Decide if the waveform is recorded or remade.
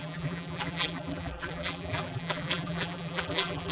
remade